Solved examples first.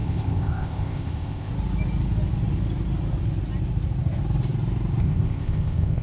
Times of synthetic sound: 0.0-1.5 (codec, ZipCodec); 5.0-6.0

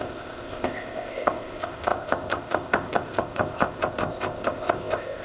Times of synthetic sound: 0.0-5.2 (codec, ZipCodec)

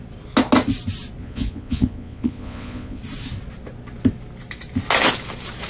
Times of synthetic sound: 1.2-3.0 (vocoder, Vocos)